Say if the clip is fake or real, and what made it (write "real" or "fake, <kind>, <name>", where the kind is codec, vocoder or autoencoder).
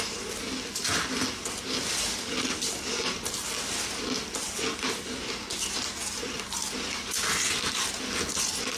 real